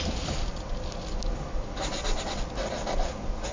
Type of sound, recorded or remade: recorded